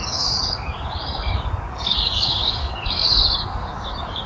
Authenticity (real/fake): fake